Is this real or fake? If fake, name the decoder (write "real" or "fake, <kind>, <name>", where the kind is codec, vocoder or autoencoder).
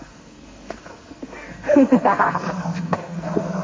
fake, codec, SNAC